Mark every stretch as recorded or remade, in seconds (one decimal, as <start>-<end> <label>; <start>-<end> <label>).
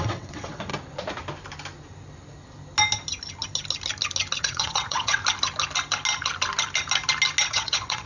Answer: 0.0-0.7 remade; 0.7-4.4 recorded; 4.4-5.2 remade; 5.2-7.5 recorded; 7.5-8.1 remade